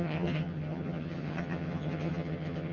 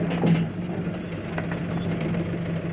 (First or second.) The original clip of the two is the second